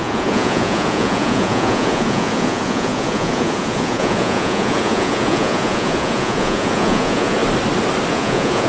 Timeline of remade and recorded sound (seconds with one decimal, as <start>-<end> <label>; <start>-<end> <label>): 0.0-7.4 remade; 7.4-8.1 recorded; 8.1-8.7 remade